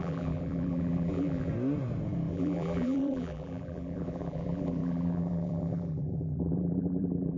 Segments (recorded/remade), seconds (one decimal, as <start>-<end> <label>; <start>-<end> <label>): 0.0-1.5 remade; 1.5-2.3 recorded; 2.3-7.4 remade